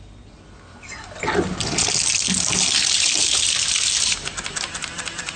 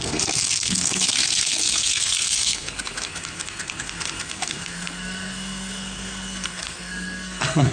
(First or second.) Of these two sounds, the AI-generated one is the second